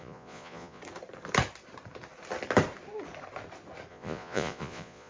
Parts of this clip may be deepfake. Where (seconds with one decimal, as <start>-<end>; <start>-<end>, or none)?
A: 0.0-0.8; 3.9-5.1